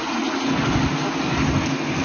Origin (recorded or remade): recorded